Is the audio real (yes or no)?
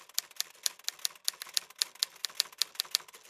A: yes